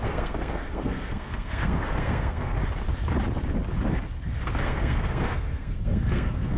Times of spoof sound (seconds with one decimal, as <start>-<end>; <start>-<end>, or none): 0.0-2.5; 4.4-6.6

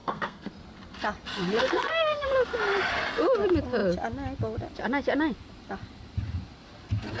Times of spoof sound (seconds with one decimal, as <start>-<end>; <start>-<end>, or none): 0.0-0.5; 1.6-2.3

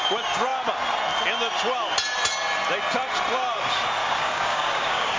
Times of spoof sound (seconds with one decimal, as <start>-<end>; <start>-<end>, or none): 4.0-5.2

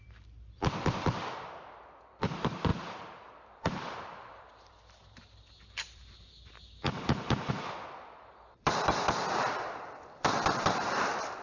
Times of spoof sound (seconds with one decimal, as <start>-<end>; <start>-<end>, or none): 0.0-11.4

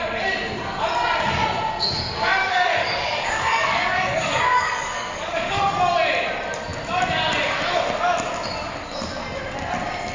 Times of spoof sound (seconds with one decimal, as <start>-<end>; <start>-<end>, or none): 2.4-5.6